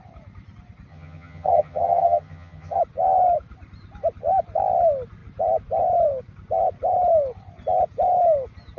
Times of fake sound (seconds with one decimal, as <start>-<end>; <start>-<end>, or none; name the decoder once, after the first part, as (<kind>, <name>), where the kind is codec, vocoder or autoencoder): 0.9-2.8 (vocoder, HiFi-GAN)